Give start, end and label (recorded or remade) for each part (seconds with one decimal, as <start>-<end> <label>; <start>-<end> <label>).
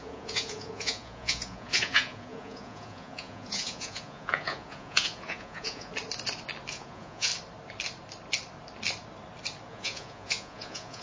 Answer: 0.0-5.9 remade; 5.9-6.7 recorded; 6.7-7.3 remade; 7.3-9.7 recorded; 9.7-11.0 remade